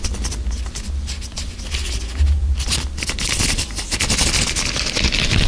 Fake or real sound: real